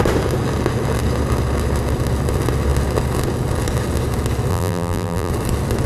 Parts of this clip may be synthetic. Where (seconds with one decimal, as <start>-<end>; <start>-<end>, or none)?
4.5-5.3